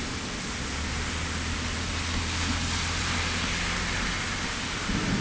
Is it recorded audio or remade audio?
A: recorded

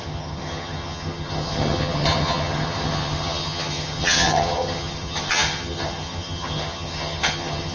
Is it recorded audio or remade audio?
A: remade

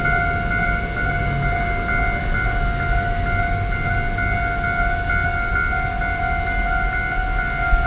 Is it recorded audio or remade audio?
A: recorded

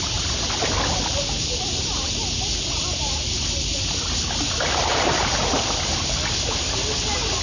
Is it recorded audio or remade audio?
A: recorded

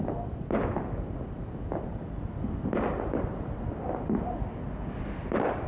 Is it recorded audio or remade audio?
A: recorded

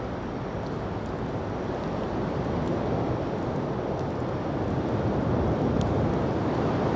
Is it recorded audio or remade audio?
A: recorded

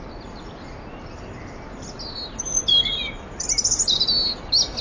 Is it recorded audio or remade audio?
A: recorded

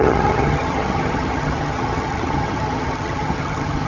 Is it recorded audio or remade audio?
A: remade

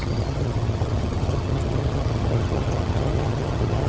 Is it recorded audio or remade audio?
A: remade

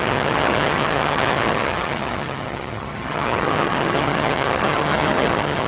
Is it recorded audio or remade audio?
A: remade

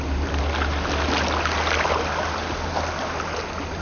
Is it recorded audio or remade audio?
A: recorded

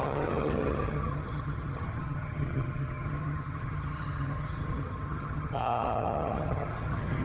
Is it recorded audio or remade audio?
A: remade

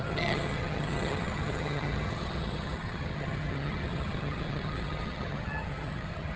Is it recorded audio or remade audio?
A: remade